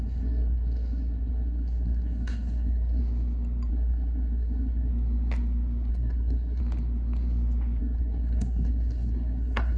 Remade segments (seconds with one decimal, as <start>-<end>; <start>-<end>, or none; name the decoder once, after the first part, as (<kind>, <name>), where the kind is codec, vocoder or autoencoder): 0.0-3.0 (codec, SNAC); 3.7-4.9; 5.9-6.6; 7.8-9.8